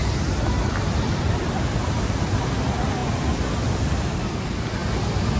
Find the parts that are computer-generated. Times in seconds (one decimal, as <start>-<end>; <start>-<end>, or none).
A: none